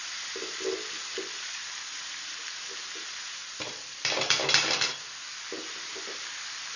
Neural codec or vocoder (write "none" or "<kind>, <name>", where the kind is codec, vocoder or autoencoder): none